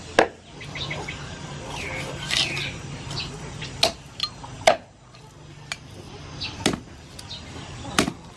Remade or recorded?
recorded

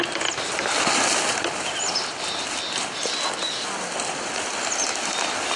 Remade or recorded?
remade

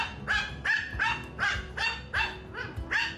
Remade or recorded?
recorded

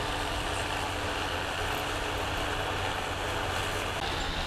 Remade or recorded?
recorded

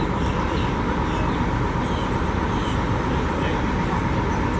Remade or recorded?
remade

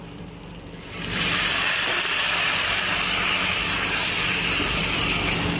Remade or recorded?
remade